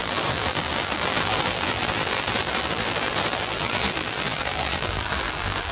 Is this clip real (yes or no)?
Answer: no